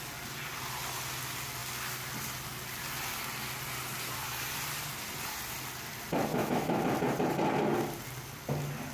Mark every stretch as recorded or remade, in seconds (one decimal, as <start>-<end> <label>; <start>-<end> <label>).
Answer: 0.0-6.3 recorded; 6.3-6.8 remade; 6.8-8.9 recorded